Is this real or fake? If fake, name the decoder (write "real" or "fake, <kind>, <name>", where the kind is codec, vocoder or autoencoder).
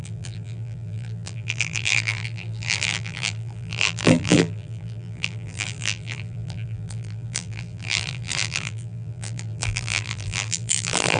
fake, vocoder, BigVGAN v2